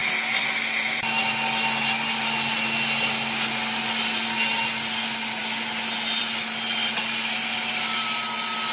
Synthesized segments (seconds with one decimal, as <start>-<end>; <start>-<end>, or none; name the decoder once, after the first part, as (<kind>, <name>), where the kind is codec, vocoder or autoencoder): none